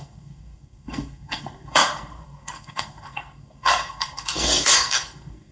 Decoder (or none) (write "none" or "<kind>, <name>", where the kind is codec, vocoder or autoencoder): codec, SNAC